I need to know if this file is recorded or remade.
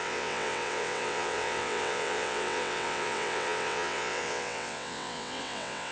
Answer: remade